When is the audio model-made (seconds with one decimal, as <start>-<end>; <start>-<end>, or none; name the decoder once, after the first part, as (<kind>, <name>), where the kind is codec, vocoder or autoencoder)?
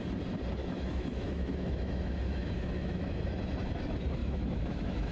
0.6-3.3 (autoencoder, DAC-VAE); 4.2-5.1